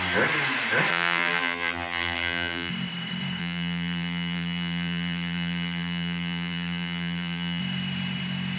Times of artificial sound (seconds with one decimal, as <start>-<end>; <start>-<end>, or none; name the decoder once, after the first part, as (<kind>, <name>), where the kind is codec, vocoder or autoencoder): 0.9-2.7 (vocoder, BigVGAN v2); 3.4-7.6